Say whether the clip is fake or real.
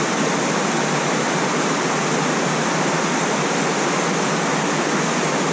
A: real